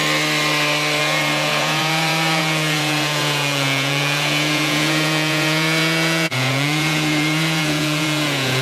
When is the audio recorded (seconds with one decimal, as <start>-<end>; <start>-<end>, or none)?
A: 0.0-1.0